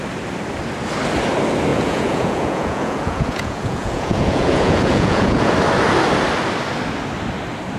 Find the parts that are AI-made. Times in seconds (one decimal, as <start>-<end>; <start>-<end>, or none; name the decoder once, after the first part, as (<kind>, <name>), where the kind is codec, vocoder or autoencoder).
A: 1.7-5.5 (vocoder, Vocos)

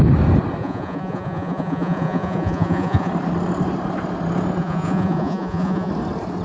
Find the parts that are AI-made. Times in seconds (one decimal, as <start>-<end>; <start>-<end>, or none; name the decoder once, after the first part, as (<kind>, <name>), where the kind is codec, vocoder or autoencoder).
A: 0.6-3.1 (vocoder, Vocos); 4.6-5.9

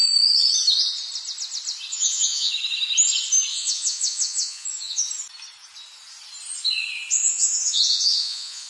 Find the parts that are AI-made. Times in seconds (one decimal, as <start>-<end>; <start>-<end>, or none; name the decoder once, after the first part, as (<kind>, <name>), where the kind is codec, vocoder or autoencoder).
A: 1.9-2.5 (vocoder, Vocos); 3.5-5.0; 7.3-8.7

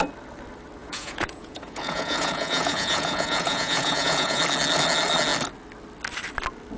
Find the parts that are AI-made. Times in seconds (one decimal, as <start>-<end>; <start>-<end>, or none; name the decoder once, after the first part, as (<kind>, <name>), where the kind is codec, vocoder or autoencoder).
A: 0.8-4.4 (vocoder, Vocos)

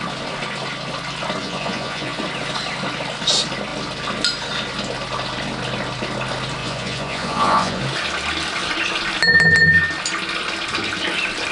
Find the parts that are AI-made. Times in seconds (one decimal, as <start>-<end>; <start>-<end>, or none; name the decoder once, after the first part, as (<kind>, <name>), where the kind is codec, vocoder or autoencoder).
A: 1.4-2.2 (vocoder, Vocos); 6.6-7.8